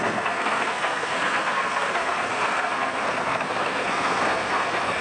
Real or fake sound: fake